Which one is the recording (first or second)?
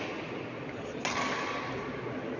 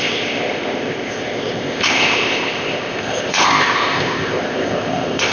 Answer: first